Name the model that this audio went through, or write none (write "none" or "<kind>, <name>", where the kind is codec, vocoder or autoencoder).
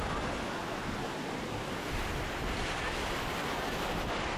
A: none